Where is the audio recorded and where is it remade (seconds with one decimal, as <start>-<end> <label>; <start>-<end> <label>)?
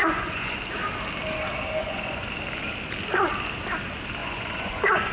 0.0-0.6 remade; 0.6-1.8 recorded; 1.8-2.3 remade; 2.3-4.2 recorded; 4.2-5.1 remade